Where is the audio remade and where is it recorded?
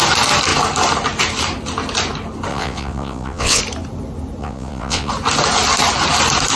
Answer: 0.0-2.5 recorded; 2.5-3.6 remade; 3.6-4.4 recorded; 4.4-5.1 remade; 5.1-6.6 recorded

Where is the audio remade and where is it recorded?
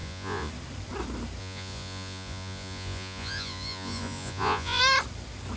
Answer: 0.0-0.5 remade; 0.5-1.4 recorded; 1.4-4.8 remade; 4.8-5.6 recorded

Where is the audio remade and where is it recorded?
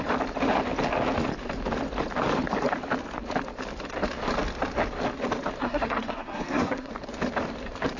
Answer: 0.0-5.6 recorded; 5.6-6.9 remade; 6.9-8.0 recorded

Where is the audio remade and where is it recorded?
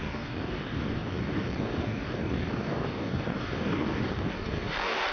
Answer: 0.0-5.1 remade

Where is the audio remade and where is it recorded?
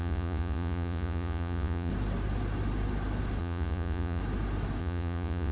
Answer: 0.0-1.9 remade; 1.9-3.4 recorded; 3.4-4.2 remade; 4.2-4.8 recorded; 4.8-5.5 remade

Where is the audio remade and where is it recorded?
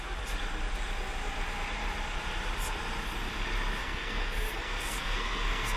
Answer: 0.0-3.8 recorded; 3.8-5.8 remade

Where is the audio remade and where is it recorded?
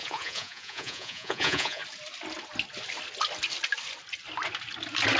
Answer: 0.0-1.8 remade; 1.8-5.2 recorded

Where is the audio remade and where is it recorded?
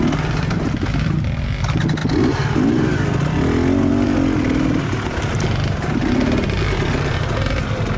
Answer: 0.0-8.0 recorded